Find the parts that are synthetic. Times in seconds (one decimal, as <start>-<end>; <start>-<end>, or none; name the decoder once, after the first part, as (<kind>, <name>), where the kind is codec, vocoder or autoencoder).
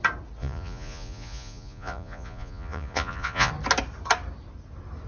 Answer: 0.4-3.5 (vocoder, Vocos)